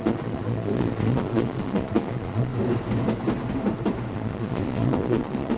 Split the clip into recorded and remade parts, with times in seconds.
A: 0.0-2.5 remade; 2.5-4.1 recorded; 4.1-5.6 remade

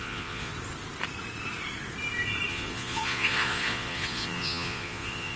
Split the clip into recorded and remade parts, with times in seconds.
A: 0.0-0.5 remade; 0.5-2.5 recorded; 2.5-5.4 remade

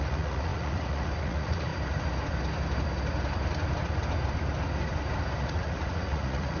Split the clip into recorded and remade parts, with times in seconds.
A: 0.0-1.7 remade; 1.7-5.4 recorded; 5.4-6.6 remade

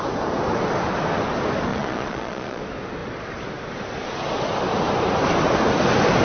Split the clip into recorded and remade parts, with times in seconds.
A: 0.0-1.7 recorded; 1.7-2.6 remade; 2.6-6.2 recorded